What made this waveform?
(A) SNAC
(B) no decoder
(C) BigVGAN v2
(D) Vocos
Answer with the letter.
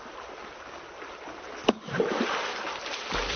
B